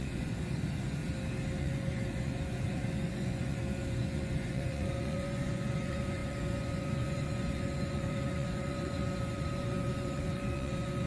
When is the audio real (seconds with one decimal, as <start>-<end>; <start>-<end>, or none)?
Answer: 1.0-1.6